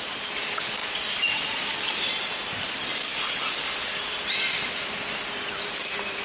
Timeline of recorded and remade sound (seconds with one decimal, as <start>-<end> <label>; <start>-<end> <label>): 0.0-6.2 recorded